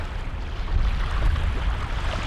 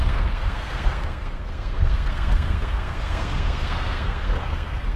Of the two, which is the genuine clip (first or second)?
first